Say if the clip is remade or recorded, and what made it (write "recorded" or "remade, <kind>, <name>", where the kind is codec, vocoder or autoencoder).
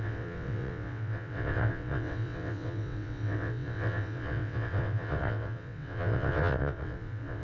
remade, vocoder, WaveNeXt